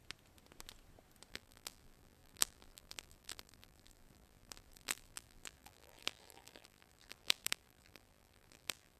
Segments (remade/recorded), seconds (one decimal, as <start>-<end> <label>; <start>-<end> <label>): 0.0-1.3 recorded; 1.3-9.0 remade